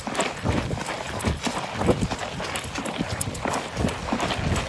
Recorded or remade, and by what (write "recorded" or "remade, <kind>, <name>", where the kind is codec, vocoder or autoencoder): recorded